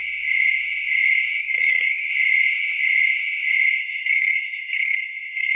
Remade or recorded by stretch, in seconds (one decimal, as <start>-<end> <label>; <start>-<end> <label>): 0.0-1.4 recorded; 1.4-2.1 remade; 2.1-3.8 recorded; 3.8-5.5 remade